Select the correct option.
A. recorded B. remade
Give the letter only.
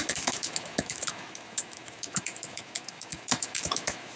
B